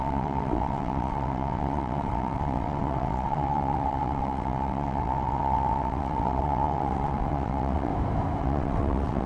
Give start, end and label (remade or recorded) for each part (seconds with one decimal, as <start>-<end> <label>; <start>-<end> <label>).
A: 0.0-7.9 remade; 7.9-8.4 recorded; 8.4-9.3 remade